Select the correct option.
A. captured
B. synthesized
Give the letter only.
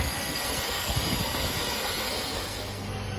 B